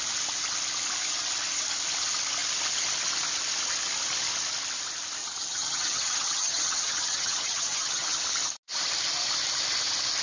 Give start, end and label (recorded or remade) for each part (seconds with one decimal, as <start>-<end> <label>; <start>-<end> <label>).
0.0-5.2 recorded; 5.2-8.2 remade; 8.2-10.2 recorded